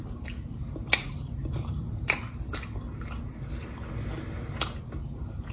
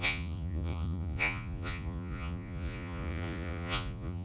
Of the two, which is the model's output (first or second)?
second